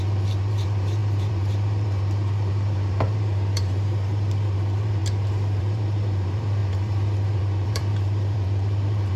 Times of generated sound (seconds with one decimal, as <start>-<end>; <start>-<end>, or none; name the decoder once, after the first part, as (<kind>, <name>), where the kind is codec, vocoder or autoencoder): 0.0-5.0 (vocoder, BigVGAN v2); 5.6-9.2